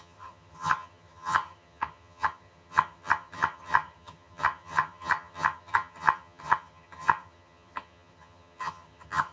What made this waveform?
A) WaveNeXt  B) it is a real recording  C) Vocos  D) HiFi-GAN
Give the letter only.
D